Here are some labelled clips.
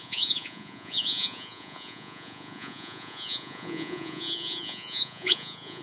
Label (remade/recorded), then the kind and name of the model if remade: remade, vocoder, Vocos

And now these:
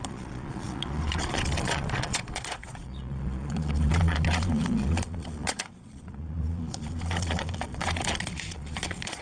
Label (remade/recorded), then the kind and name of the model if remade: remade, vocoder, Vocos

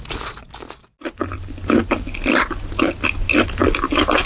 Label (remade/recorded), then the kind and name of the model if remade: recorded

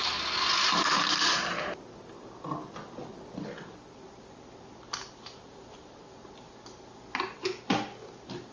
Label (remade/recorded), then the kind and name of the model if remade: recorded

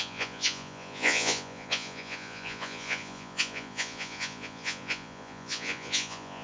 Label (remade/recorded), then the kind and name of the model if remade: remade, vocoder, Vocos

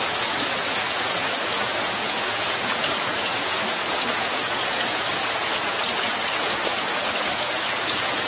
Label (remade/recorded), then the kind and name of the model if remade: remade, vocoder, Vocos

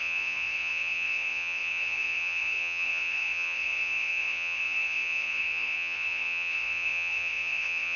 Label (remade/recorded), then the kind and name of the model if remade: remade, vocoder, Vocos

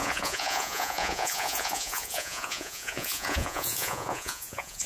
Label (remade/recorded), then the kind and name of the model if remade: remade, vocoder, Vocos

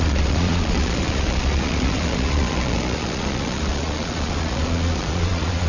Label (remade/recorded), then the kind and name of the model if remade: remade, vocoder, Vocos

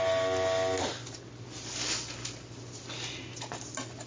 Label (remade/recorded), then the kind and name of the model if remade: recorded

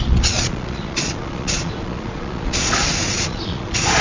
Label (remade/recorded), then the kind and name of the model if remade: remade, vocoder, Vocos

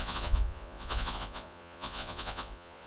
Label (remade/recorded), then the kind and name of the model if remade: remade, vocoder, Vocos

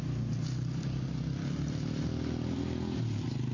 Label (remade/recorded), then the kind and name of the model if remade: recorded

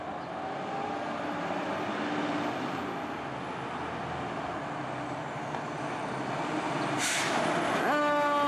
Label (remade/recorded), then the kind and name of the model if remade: recorded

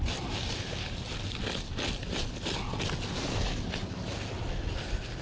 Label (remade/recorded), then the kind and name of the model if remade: recorded